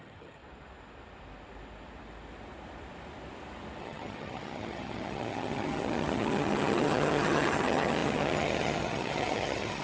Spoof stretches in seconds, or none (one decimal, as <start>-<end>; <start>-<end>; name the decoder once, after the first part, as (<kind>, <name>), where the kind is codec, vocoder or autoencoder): 0.0-0.4 (vocoder, HiFi-GAN); 3.8-9.8

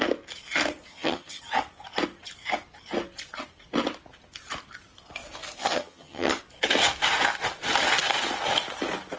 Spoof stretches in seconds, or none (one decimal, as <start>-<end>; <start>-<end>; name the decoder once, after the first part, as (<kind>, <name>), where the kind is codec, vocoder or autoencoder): 0.9-1.4 (vocoder, HiFi-GAN); 5.6-6.4

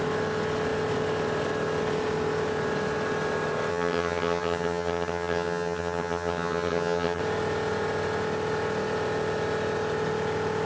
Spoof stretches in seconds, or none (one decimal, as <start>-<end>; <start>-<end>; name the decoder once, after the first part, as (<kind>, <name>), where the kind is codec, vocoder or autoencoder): 3.7-7.2 (vocoder, HiFi-GAN)